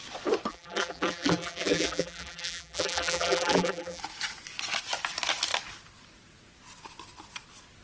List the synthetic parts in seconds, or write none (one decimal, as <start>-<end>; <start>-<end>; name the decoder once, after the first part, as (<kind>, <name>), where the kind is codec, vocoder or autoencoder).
0.5-4.0 (vocoder, BigVGAN v2)